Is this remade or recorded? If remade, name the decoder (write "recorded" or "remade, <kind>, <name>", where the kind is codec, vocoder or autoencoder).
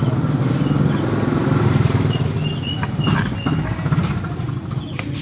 recorded